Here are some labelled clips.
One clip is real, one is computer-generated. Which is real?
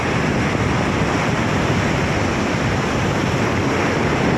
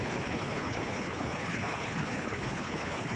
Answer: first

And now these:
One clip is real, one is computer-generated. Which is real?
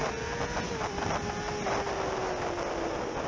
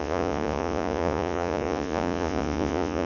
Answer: first